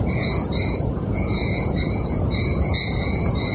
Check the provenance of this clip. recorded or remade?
remade